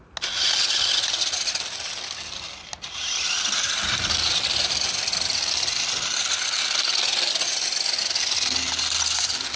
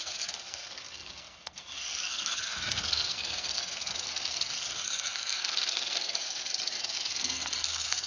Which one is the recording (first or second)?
first